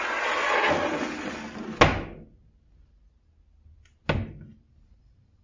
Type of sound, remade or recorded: recorded